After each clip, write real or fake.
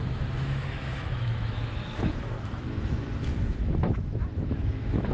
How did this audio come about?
fake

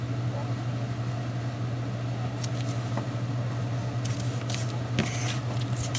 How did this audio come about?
real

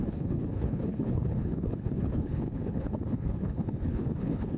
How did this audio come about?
fake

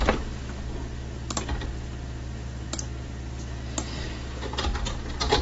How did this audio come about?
real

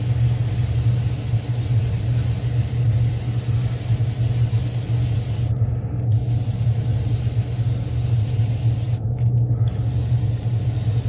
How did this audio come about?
real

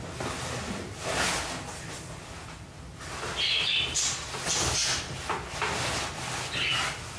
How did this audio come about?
real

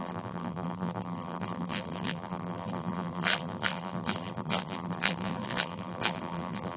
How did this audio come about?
fake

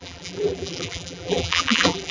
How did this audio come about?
fake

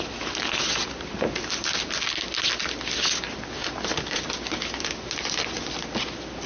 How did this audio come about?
real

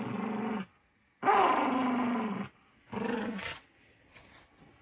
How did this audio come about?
real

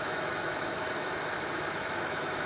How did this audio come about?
fake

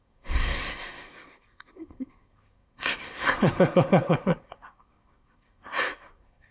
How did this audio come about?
fake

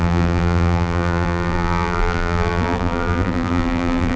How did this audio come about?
fake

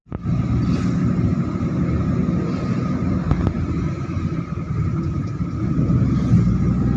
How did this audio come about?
real